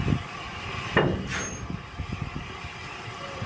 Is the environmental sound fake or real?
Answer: real